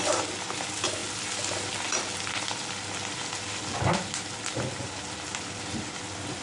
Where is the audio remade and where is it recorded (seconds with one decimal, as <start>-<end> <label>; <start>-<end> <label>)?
0.0-6.4 recorded